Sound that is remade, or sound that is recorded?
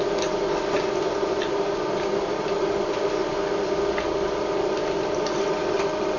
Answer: recorded